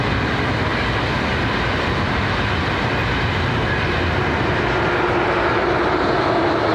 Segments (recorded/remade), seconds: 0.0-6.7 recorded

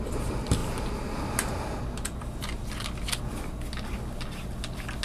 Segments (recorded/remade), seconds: 0.0-5.0 recorded

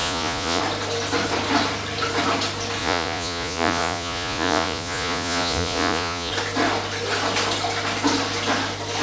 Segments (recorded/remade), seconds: 0.0-0.6 remade; 0.6-2.8 recorded; 2.8-6.3 remade; 6.3-9.0 recorded

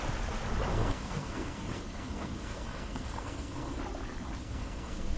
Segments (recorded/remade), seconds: 0.0-0.7 recorded; 0.7-3.8 remade; 3.8-4.4 recorded; 4.4-5.2 remade

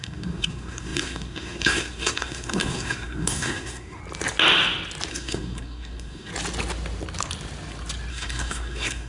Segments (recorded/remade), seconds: 0.0-4.0 remade; 4.0-5.1 recorded; 5.1-6.3 remade; 6.3-8.1 recorded; 8.1-9.1 remade